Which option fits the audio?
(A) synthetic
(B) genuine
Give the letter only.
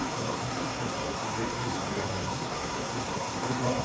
A